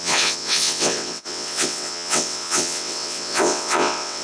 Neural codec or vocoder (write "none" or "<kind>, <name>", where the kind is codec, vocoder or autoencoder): vocoder, WaveNeXt